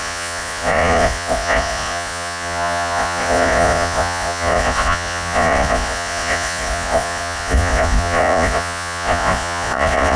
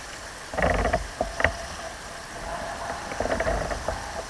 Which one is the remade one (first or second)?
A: first